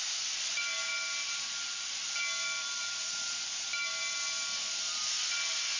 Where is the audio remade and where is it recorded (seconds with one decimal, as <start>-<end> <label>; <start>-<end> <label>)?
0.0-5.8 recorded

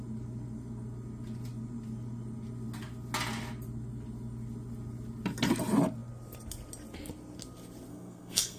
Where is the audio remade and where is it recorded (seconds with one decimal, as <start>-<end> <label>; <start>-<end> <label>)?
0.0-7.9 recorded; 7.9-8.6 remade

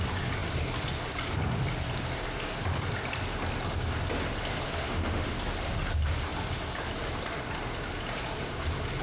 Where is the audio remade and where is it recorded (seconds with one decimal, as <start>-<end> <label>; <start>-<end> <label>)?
0.0-4.8 recorded; 4.8-5.3 remade; 5.3-9.0 recorded

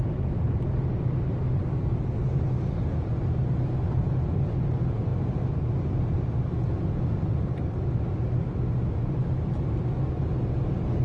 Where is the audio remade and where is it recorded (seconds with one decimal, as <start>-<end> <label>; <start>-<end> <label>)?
0.0-11.0 recorded